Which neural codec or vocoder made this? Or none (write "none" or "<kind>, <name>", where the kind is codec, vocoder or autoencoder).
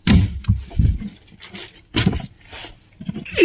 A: none